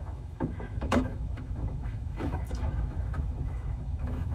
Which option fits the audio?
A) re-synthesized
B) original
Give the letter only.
A